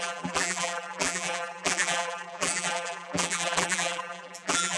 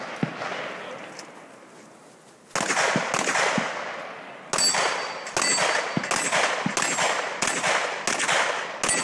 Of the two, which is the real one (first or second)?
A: second